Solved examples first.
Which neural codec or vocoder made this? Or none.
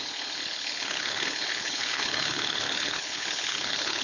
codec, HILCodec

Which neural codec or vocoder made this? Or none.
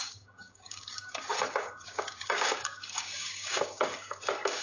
codec, DAC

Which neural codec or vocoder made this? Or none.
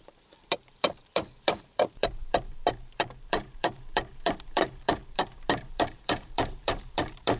vocoder, BigVGAN v2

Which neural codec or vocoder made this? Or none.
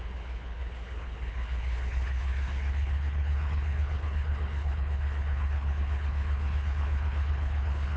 codec, HILCodec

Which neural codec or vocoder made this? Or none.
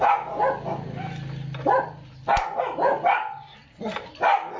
none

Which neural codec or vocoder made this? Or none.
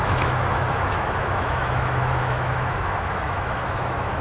autoencoder, DAC-VAE